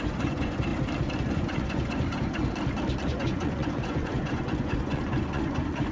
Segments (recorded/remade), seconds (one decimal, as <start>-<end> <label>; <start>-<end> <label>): 0.0-0.7 remade; 0.7-1.3 recorded; 1.3-2.4 remade; 2.4-3.0 recorded; 3.0-5.9 remade